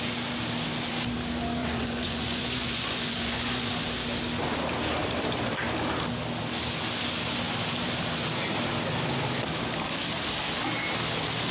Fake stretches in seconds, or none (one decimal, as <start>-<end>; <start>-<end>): 1.6-3.7